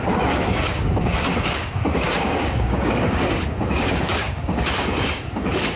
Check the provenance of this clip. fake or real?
fake